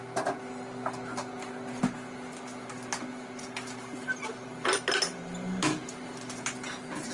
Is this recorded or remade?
recorded